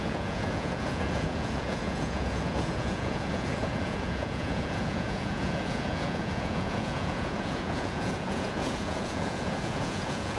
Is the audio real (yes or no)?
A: no